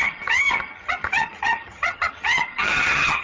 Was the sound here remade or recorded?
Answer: remade